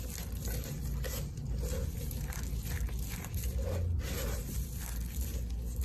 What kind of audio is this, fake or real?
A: real